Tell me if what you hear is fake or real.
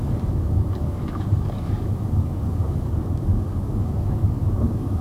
fake